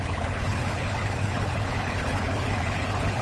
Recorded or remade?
remade